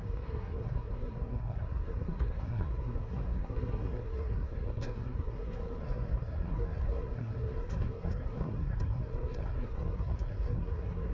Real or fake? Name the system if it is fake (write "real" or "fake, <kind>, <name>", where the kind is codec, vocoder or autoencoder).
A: fake, codec, SNAC